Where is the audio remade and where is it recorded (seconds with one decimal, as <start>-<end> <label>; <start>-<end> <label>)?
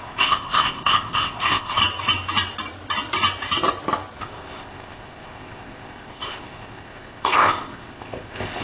0.0-1.8 remade; 1.8-4.2 recorded; 4.2-8.6 remade